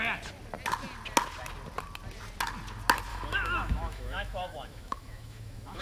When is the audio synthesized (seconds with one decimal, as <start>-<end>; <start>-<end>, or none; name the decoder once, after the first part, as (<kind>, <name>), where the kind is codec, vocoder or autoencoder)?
3.1-5.8 (autoencoder, DAC-VAE)